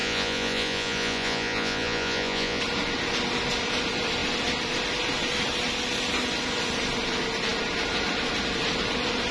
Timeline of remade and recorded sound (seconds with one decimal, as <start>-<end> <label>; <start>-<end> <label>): 0.0-2.6 remade; 2.6-9.3 recorded